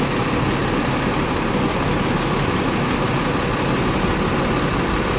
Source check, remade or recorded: recorded